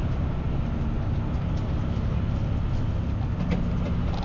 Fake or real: real